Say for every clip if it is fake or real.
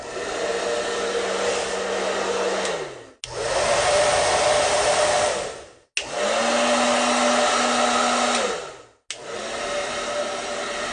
real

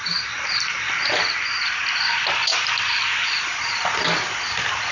real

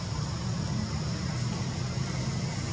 real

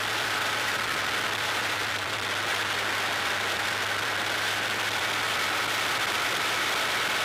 fake